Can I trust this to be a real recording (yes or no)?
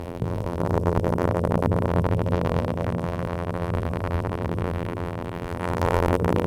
no